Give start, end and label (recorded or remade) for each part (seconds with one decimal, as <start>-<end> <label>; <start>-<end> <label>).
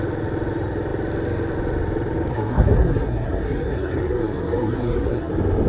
0.0-2.3 recorded; 2.3-5.3 remade; 5.3-5.7 recorded